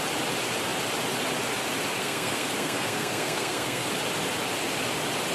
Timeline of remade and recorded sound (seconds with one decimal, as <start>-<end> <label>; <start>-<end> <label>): 0.0-2.0 recorded; 2.0-3.9 remade; 3.9-5.3 recorded